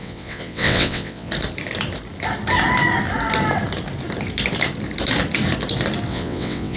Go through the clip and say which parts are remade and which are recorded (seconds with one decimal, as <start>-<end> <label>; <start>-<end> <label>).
0.0-1.3 remade; 1.3-6.1 recorded; 6.1-6.8 remade